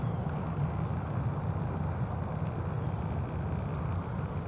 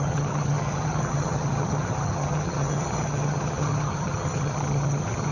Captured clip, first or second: first